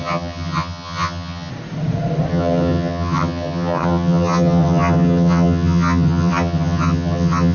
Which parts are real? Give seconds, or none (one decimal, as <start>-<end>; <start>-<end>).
1.5-2.3